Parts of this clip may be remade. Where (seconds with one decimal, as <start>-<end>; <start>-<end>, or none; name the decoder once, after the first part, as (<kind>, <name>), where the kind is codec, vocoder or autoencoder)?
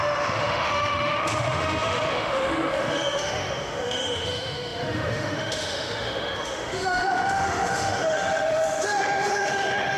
0.0-10.0 (autoencoder, DAC-VAE)